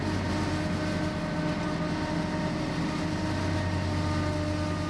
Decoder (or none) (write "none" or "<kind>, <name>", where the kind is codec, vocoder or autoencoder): none